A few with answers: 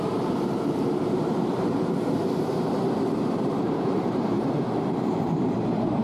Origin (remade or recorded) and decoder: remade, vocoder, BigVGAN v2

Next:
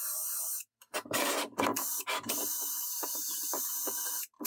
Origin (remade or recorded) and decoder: remade, vocoder, BigVGAN v2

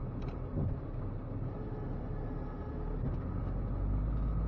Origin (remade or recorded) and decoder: recorded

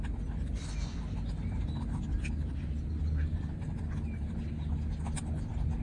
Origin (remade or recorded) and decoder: recorded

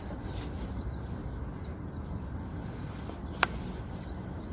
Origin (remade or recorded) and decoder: recorded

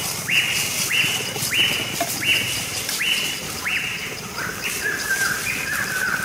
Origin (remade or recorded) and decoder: recorded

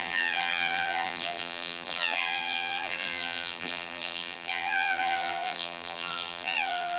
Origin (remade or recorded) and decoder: remade, vocoder, BigVGAN v2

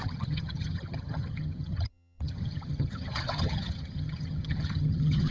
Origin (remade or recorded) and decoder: remade, vocoder, HiFi-GAN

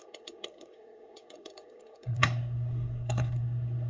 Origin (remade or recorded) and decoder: remade, codec, SNAC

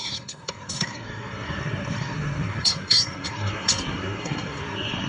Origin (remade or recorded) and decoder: remade, codec, SNAC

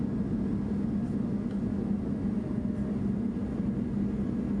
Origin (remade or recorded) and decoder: recorded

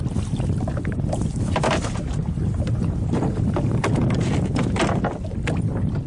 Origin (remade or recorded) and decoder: recorded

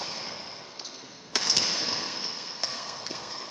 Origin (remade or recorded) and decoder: remade, codec, SNAC